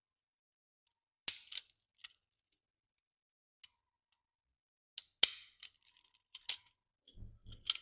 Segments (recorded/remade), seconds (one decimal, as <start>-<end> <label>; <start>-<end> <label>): 0.0-5.6 recorded; 5.6-6.4 remade; 6.4-7.8 recorded